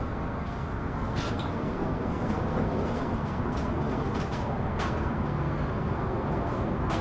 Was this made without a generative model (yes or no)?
no